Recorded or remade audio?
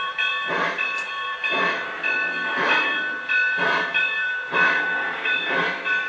remade